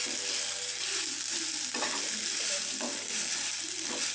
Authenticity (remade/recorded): recorded